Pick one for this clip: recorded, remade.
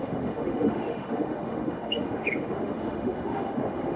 remade